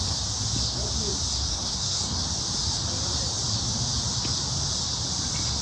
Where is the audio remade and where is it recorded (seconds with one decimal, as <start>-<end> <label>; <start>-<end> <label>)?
0.0-1.5 recorded; 1.5-2.2 remade; 2.2-5.6 recorded